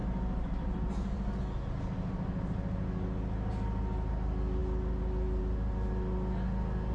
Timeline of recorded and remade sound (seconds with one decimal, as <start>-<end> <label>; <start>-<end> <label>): 0.0-1.4 remade; 1.4-6.9 recorded